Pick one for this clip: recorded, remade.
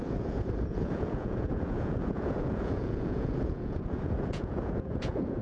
remade